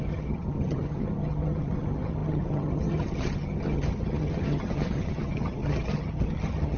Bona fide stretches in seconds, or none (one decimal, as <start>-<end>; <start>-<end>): none